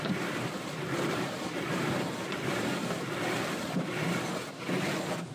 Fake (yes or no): yes